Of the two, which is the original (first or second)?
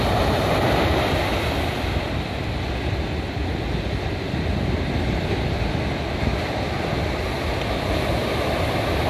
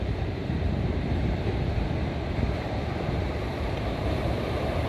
first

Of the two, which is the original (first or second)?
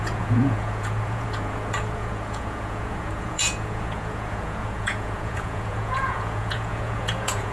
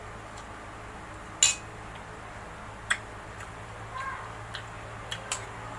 second